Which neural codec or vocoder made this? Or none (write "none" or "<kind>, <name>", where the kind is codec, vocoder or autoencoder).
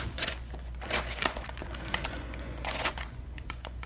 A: vocoder, Vocos